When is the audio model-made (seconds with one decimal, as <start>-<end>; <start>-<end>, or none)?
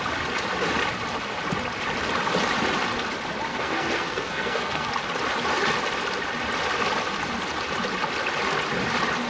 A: 3.5-4.9